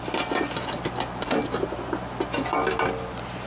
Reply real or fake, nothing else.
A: real